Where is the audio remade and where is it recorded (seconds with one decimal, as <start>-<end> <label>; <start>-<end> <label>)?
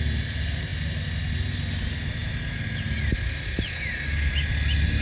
0.0-5.0 recorded